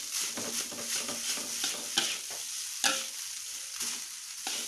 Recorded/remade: recorded